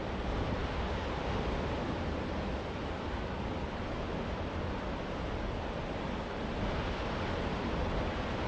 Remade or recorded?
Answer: recorded